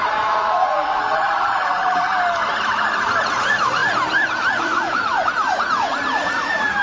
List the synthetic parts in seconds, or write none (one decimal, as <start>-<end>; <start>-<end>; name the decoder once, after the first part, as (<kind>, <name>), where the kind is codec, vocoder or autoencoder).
0.0-2.1 (vocoder, Vocos); 3.2-3.8; 4.5-6.8